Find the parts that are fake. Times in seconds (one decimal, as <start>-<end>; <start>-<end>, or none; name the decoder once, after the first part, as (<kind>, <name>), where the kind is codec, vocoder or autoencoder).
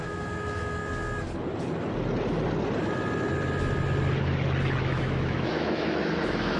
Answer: 0.0-0.8 (autoencoder, DAC-VAE); 4.8-6.6